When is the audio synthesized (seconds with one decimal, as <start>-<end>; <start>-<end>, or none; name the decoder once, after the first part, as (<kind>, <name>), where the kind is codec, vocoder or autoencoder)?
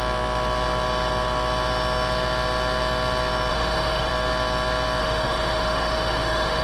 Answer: 3.5-4.1 (autoencoder, DAC-VAE); 5.0-6.6